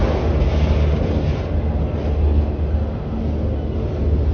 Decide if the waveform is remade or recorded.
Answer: recorded